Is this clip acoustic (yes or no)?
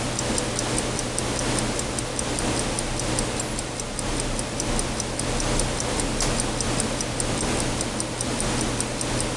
yes